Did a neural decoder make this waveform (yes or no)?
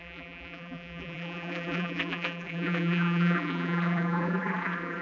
yes